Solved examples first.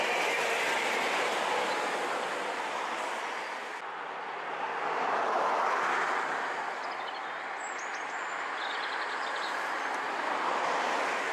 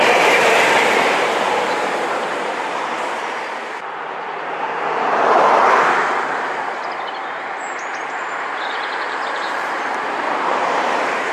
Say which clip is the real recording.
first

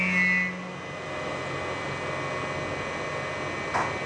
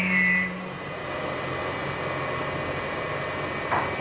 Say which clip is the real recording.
first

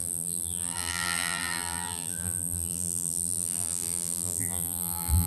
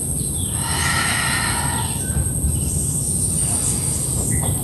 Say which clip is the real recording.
second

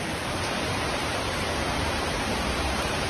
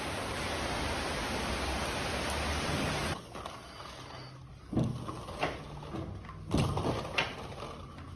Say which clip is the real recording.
second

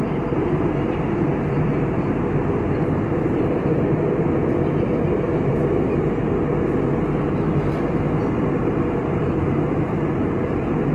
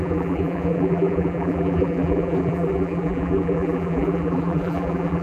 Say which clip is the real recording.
first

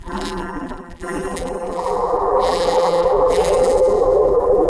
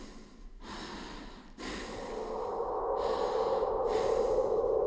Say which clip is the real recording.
second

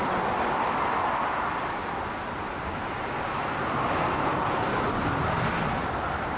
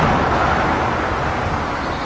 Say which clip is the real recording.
second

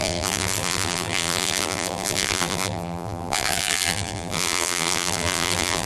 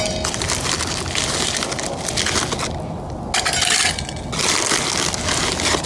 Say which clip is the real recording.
second